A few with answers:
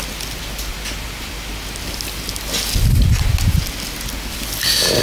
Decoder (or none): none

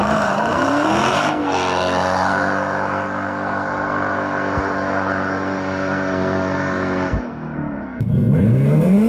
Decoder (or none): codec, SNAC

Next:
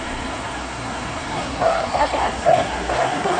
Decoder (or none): codec, SNAC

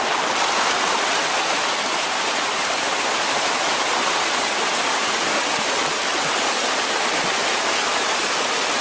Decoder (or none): none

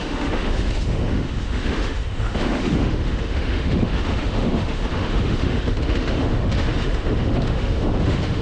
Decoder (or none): autoencoder, DAC-VAE